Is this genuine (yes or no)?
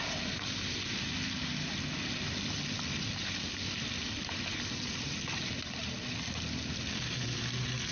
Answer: yes